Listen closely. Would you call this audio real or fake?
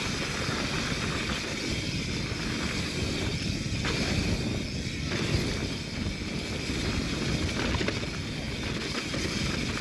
real